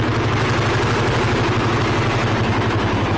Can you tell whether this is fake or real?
real